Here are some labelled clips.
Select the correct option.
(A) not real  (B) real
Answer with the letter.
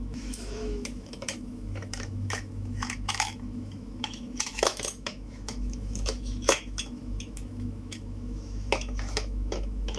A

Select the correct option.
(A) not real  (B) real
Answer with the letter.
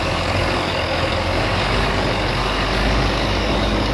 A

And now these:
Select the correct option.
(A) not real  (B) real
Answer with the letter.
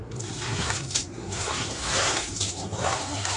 A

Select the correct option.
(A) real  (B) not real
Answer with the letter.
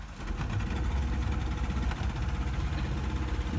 A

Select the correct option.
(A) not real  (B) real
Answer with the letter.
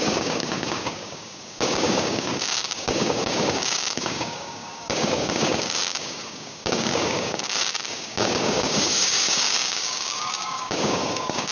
A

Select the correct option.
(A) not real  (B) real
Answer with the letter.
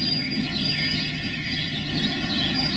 A